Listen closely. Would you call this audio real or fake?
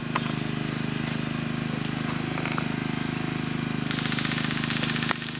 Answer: real